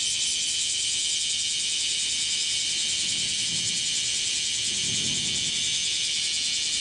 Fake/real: real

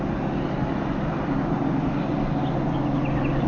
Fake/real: real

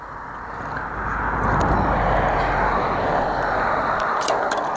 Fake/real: fake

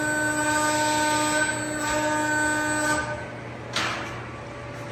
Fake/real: real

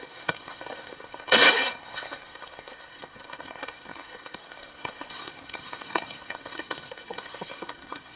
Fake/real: fake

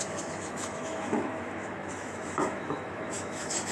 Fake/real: fake